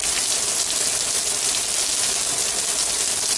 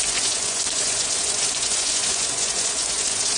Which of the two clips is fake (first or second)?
second